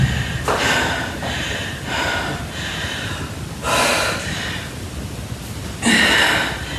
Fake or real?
real